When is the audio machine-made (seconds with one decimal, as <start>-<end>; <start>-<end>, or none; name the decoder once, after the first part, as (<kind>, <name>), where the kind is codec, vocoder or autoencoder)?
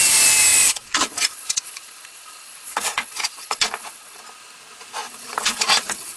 0.5-4.2 (vocoder, Vocos); 5.0-6.2